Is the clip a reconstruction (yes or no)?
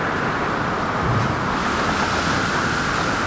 no